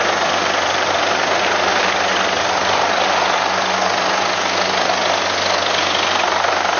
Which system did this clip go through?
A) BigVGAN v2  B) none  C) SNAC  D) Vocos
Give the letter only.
B